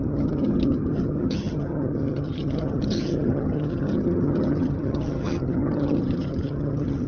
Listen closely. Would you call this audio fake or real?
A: fake